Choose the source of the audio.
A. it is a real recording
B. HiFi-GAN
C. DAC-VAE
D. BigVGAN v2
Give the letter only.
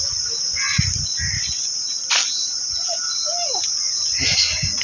A